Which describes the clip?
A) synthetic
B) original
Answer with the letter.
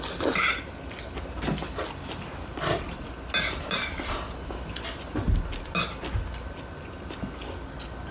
B